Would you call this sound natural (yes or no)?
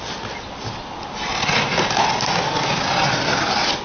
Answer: yes